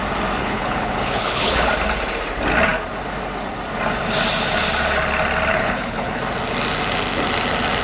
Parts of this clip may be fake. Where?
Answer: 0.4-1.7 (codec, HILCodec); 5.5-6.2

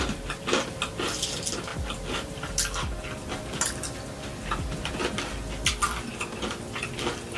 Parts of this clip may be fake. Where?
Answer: none